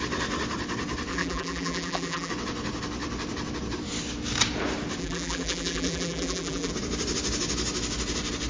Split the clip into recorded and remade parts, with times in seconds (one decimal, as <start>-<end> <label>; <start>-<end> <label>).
0.0-1.1 recorded; 1.1-2.3 remade; 2.3-5.0 recorded; 5.0-6.7 remade; 6.7-8.5 recorded

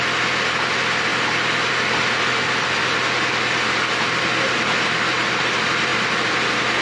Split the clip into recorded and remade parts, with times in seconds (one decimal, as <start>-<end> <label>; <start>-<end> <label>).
0.0-6.8 recorded

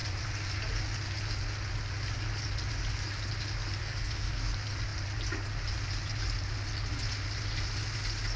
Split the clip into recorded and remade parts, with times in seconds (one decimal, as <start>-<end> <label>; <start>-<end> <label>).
0.0-3.8 recorded; 3.8-4.5 remade; 4.5-8.4 recorded